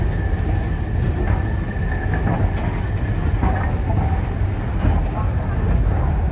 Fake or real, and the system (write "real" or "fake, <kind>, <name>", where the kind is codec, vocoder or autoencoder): real